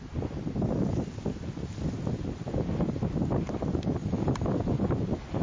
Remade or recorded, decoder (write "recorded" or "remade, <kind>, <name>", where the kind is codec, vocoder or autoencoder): recorded